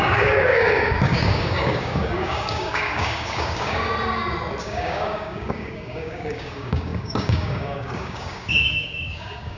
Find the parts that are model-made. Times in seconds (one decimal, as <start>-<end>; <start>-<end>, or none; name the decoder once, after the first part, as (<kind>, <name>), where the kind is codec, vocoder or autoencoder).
0.0-3.9 (codec, DAC); 4.6-9.6